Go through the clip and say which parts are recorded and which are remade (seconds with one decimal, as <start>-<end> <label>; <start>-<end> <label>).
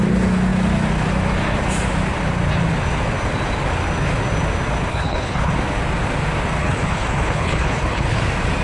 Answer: 0.0-4.9 recorded; 4.9-5.5 remade; 5.5-6.6 recorded; 6.6-8.2 remade; 8.2-8.6 recorded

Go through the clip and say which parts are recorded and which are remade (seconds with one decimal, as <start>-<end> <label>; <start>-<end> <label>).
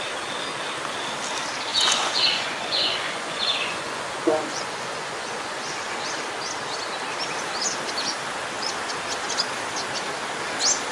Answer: 0.0-1.7 recorded; 1.7-6.1 remade; 6.1-10.9 recorded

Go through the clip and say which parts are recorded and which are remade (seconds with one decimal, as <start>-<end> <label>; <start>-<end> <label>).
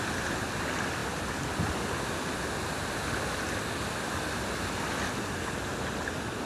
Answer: 0.0-6.5 recorded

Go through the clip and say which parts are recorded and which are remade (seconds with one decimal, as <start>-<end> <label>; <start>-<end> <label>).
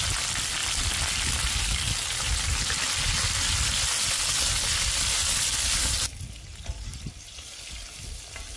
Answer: 0.0-8.6 recorded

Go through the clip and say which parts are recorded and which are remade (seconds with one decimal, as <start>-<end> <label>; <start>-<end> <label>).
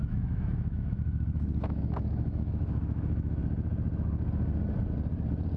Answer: 0.0-3.4 remade; 3.4-5.6 recorded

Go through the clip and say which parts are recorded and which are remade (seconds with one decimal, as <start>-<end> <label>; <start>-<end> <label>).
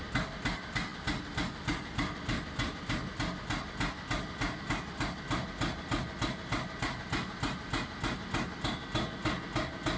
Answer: 0.0-10.0 recorded